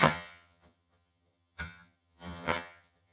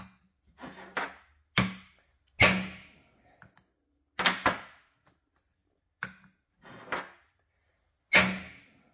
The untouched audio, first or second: second